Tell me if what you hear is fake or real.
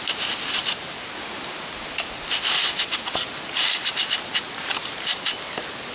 real